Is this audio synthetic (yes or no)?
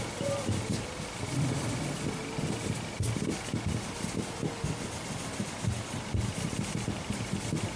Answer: no